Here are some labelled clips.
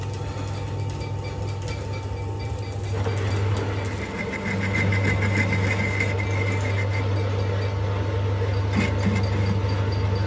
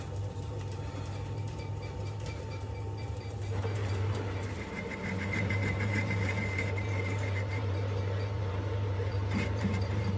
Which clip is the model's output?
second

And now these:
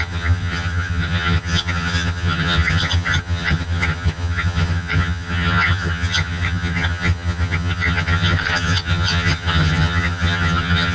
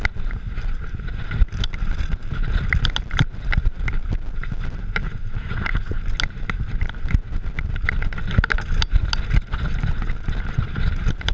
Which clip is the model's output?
first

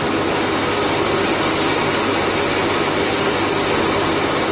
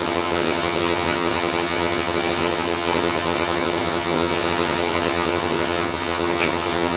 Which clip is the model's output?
second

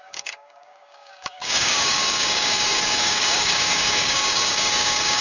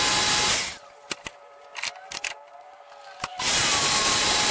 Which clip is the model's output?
first